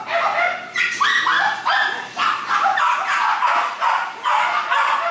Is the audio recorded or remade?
recorded